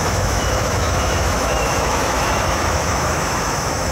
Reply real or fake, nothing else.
fake